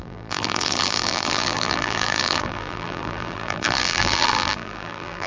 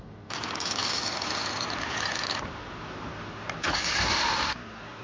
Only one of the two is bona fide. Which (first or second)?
second